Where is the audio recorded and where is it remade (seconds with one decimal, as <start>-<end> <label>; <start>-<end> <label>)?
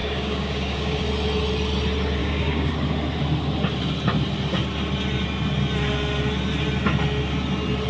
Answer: 0.0-1.0 remade; 1.0-2.2 recorded; 2.2-2.7 remade; 2.7-7.9 recorded